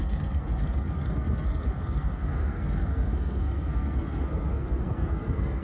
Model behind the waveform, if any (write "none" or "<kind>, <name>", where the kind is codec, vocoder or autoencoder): codec, SNAC